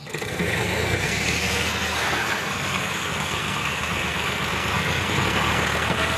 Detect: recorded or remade remade